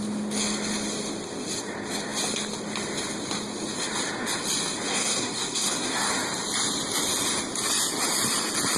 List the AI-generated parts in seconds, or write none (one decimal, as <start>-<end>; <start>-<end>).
4.9-6.1